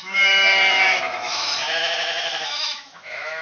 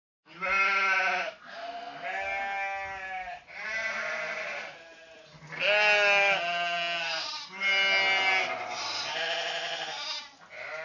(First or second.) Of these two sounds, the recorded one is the second